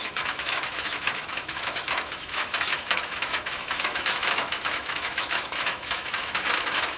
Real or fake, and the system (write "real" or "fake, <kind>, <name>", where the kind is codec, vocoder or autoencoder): fake, autoencoder, DAC-VAE